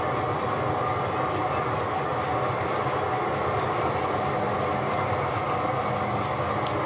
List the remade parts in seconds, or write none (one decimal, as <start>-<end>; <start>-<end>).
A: none